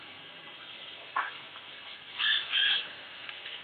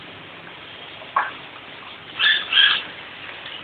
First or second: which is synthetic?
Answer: first